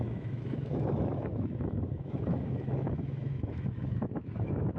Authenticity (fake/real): fake